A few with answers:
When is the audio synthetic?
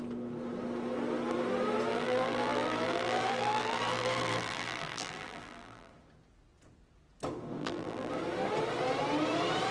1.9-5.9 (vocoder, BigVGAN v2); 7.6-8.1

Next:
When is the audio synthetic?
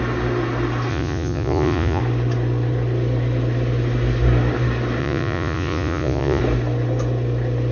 0.9-2.0 (vocoder, Vocos); 5.0-6.4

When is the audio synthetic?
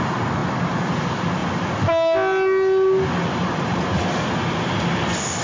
none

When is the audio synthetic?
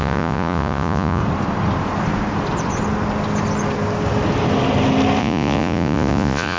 0.0-1.2 (vocoder, Vocos); 5.2-6.6